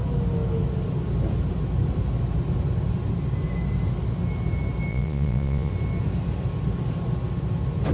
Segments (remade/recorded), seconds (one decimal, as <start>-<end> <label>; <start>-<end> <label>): 0.0-4.9 recorded; 4.9-5.7 remade; 5.7-7.9 recorded